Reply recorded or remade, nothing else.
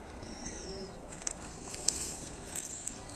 remade